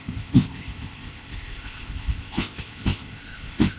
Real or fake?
fake